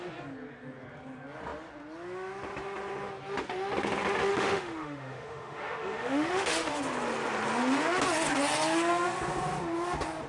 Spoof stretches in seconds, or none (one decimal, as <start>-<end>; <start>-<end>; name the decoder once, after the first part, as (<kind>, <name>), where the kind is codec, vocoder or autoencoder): 4.3-6.7 (autoencoder, DAC-VAE)